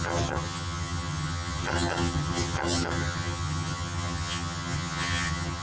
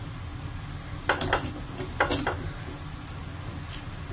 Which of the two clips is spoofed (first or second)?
first